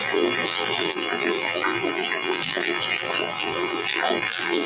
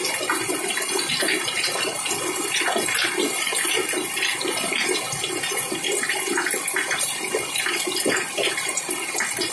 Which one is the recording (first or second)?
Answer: second